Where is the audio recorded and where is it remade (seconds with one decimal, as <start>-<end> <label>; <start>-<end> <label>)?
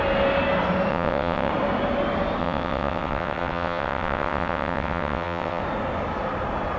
0.0-0.9 recorded; 0.9-1.5 remade; 1.5-2.4 recorded; 2.4-5.6 remade; 5.6-6.8 recorded